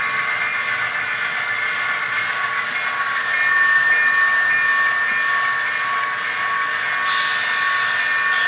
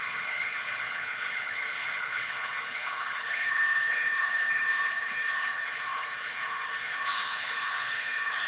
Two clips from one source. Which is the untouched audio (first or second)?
first